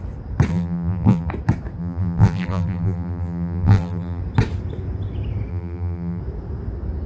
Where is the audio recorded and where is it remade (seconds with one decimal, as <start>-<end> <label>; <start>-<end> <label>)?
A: 0.0-0.5 recorded; 0.5-1.3 remade; 1.3-1.8 recorded; 1.8-4.2 remade; 4.2-5.5 recorded; 5.5-6.2 remade; 6.2-7.1 recorded